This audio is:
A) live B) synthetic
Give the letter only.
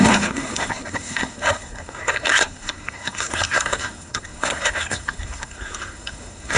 B